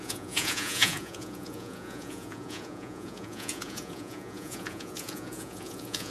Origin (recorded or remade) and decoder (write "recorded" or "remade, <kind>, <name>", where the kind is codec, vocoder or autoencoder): remade, vocoder, Vocos